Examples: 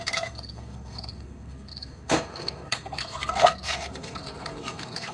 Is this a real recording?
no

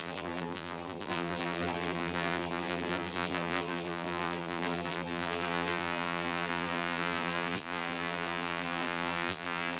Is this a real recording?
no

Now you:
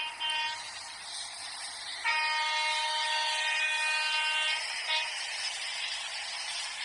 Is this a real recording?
yes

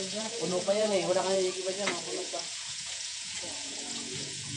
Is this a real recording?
no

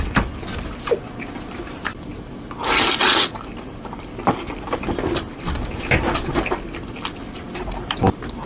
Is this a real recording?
yes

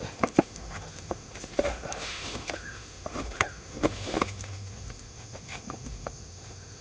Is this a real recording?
no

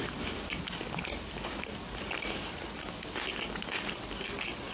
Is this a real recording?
yes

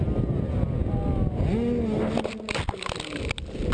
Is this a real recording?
yes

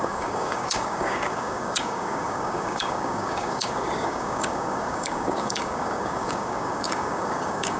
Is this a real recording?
no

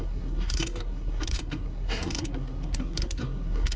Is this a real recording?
no